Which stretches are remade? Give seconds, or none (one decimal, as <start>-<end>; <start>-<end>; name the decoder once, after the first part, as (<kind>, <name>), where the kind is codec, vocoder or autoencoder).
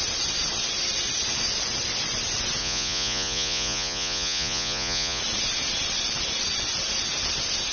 2.6-5.2 (vocoder, Vocos)